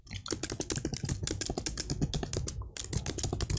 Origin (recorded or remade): recorded